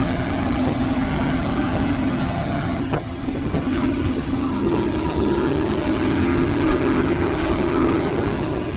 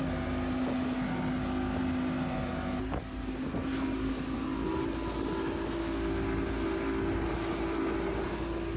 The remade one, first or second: first